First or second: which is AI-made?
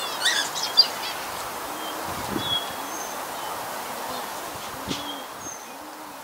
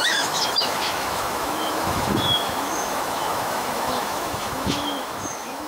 second